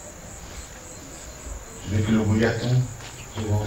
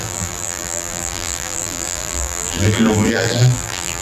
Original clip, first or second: first